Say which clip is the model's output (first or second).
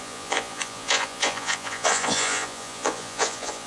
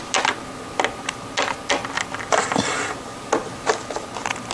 first